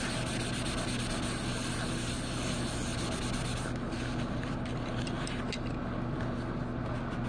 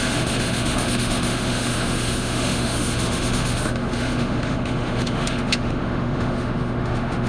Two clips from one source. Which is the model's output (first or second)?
second